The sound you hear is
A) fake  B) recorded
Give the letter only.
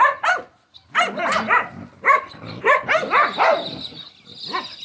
B